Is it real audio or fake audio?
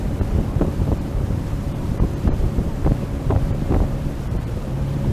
fake